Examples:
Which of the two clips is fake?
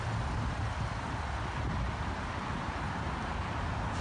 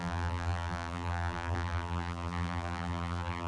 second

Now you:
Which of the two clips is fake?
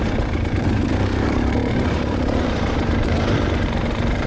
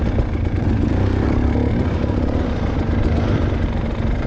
first